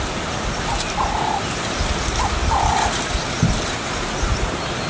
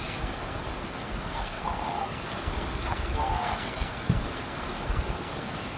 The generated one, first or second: second